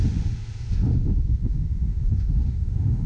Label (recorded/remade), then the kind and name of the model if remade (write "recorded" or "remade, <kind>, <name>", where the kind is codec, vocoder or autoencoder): remade, autoencoder, DAC-VAE